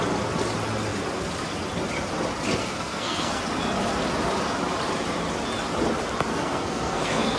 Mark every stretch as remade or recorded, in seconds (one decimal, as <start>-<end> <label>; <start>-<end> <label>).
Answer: 0.0-2.6 recorded; 2.6-3.4 remade; 3.4-6.3 recorded; 6.3-7.4 remade